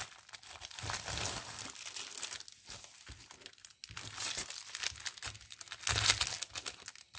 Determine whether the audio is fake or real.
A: real